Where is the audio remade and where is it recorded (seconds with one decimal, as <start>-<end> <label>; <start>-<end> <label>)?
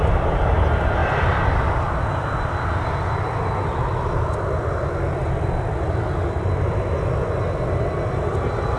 0.0-8.8 recorded